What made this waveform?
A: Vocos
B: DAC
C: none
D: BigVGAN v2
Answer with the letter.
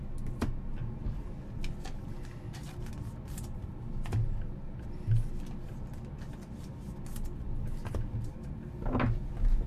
C